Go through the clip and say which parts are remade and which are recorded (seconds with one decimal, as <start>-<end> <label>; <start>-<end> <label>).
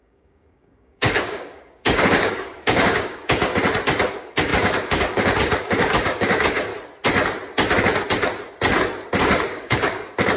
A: 0.0-3.5 remade; 3.5-4.1 recorded; 4.1-6.7 remade; 6.7-9.1 recorded; 9.1-10.4 remade